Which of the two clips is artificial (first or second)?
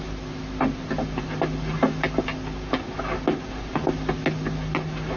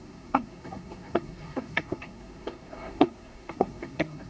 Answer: second